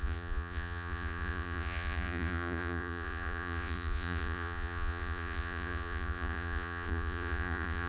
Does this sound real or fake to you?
fake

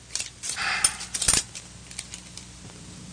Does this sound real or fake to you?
real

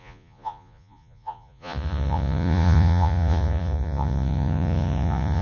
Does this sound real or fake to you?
fake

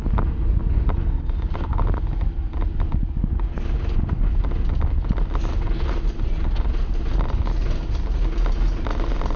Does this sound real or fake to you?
real